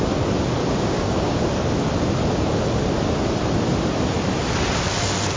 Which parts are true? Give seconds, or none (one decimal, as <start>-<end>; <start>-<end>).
0.0-0.6; 1.4-5.4